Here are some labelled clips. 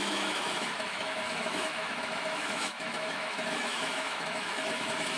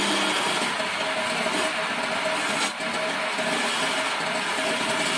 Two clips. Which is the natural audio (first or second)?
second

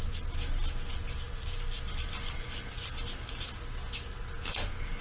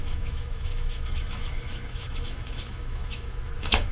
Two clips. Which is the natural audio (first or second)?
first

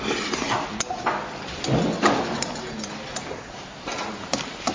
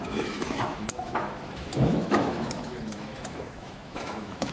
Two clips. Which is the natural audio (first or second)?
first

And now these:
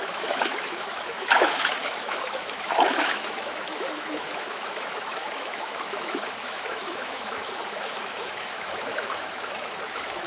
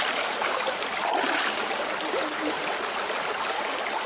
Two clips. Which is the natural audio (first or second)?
second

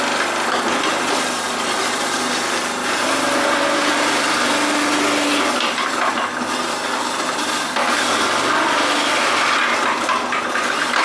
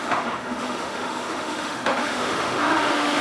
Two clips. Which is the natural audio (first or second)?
first